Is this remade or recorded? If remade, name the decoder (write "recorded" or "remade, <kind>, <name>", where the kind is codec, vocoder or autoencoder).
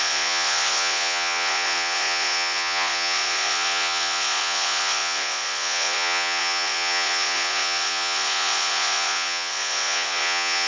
remade, vocoder, Vocos